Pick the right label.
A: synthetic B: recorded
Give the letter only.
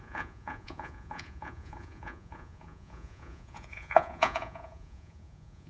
A